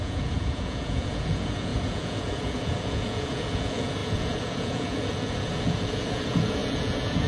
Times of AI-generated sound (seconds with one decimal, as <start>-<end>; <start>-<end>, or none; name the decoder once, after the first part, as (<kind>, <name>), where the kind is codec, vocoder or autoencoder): 0.0-7.3 (vocoder, Vocos)